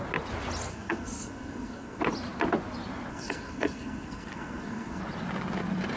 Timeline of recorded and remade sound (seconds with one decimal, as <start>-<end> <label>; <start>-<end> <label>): 0.0-0.7 recorded; 0.7-2.0 remade; 2.0-3.1 recorded; 3.1-5.0 remade; 5.0-6.0 recorded